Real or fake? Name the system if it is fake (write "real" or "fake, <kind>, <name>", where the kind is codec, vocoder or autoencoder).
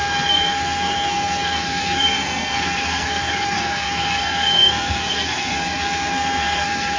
fake, codec, SNAC